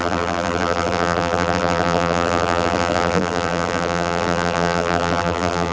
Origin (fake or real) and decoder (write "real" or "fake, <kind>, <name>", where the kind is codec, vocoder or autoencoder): fake, vocoder, BigVGAN v2